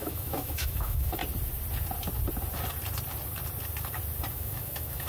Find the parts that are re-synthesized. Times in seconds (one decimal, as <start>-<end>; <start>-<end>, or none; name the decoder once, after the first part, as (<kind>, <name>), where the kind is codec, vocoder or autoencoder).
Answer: 0.0-1.2 (autoencoder, DAC-VAE); 4.3-5.1